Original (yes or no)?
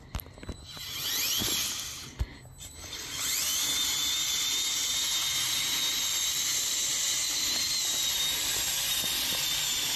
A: yes